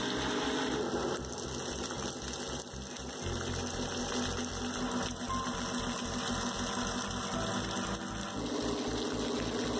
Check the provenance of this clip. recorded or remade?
recorded